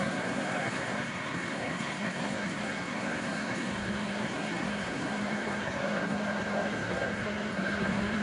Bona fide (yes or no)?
no